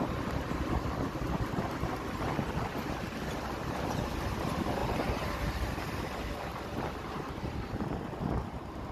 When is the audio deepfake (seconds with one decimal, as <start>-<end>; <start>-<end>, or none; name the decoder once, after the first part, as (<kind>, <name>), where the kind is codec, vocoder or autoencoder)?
0.0-4.8 (vocoder, BigVGAN v2)